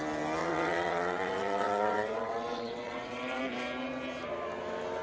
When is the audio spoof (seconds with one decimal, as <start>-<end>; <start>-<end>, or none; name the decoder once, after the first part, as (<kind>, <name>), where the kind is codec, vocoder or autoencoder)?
0.4-3.4 (vocoder, WaveNeXt)